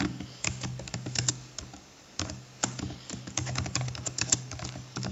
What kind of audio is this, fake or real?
fake